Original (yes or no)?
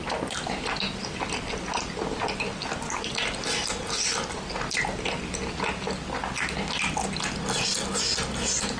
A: yes